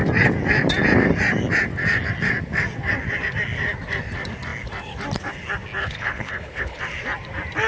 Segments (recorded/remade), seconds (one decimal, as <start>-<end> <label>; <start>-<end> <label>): 0.0-5.8 recorded; 5.8-6.8 remade; 6.8-7.7 recorded

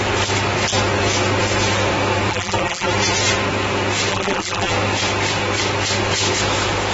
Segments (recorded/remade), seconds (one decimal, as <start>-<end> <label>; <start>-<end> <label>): 0.0-2.3 recorded; 2.3-2.9 remade; 2.9-4.1 recorded; 4.1-4.7 remade; 4.7-6.9 recorded

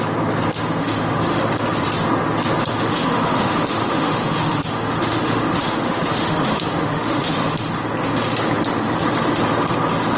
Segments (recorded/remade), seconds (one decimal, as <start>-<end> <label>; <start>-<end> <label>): 0.0-0.8 recorded; 0.8-1.5 remade; 1.5-2.7 recorded; 2.7-7.7 remade; 7.7-10.2 recorded

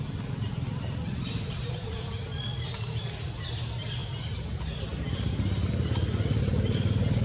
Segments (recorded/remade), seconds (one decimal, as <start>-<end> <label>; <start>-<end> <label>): 0.0-4.0 remade; 4.0-5.7 recorded; 5.7-7.2 remade

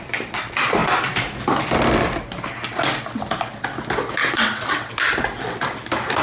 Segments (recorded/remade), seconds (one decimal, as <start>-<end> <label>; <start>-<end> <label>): 0.0-4.2 recorded; 4.2-4.9 remade; 4.9-6.2 recorded

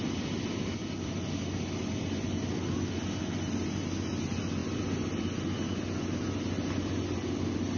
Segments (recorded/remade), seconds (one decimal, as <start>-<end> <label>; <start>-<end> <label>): 0.0-7.8 recorded

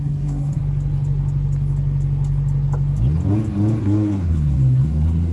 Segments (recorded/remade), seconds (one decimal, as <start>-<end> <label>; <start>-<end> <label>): 0.0-0.6 remade; 0.6-3.8 recorded; 3.8-5.3 remade